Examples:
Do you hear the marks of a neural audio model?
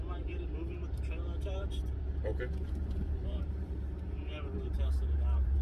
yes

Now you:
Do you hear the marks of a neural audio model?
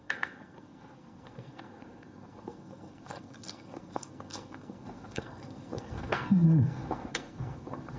yes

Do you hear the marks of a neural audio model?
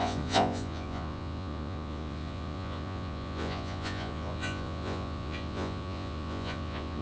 yes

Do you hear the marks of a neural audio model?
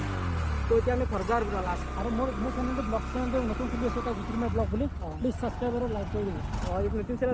no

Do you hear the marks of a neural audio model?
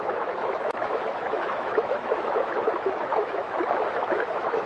yes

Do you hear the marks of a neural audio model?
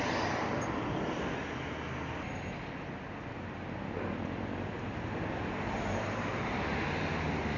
no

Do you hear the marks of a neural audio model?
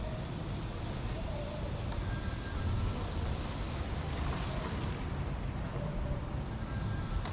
no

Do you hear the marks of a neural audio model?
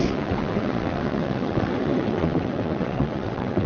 yes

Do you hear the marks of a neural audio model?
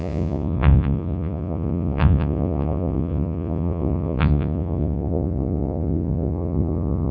yes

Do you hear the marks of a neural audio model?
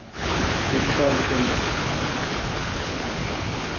yes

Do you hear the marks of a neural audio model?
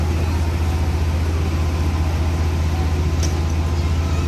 no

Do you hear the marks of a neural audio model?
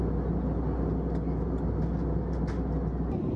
no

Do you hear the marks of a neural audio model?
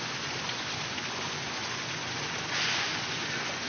yes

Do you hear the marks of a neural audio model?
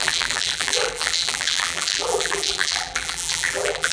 yes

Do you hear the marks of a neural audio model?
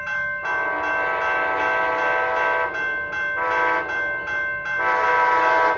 no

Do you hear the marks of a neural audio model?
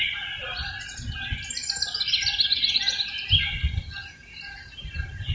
no